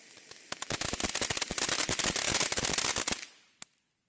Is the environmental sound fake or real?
real